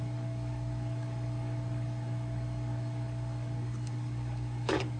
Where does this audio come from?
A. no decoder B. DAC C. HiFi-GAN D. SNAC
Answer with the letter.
B